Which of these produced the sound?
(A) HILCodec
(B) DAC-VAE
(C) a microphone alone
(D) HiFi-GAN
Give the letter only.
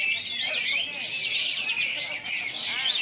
C